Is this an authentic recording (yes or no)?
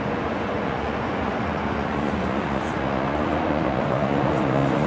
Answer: no